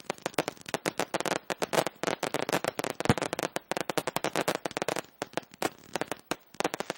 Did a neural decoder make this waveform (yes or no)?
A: yes